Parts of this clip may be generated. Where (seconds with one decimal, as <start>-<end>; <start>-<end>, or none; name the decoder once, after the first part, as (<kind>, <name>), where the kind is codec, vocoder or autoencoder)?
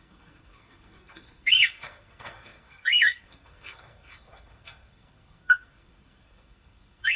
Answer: 0.0-7.2 (codec, SNAC)